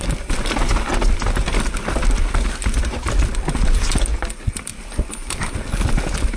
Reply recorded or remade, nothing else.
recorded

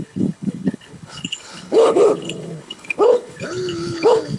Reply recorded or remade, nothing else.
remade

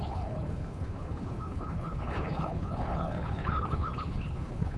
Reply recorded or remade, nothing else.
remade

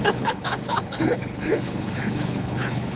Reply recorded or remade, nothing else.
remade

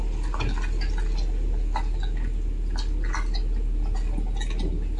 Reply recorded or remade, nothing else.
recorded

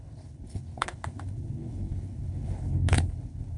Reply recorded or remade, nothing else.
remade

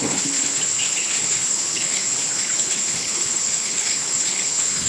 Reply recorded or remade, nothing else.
remade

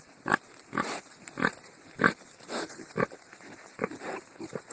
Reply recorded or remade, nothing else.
recorded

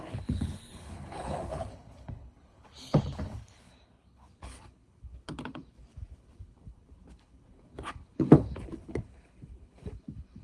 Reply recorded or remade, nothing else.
remade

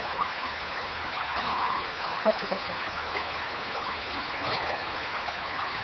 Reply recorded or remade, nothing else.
remade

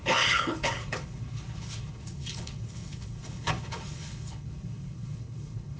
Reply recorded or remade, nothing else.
remade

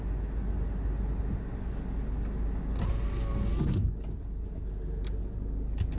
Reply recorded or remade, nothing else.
recorded